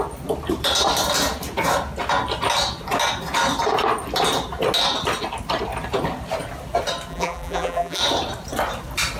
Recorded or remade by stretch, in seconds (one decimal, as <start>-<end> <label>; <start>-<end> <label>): 0.0-7.1 recorded; 7.1-8.0 remade; 8.0-9.2 recorded